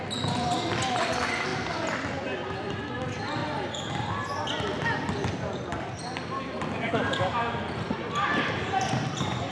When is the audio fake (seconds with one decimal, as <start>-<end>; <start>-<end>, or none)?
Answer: none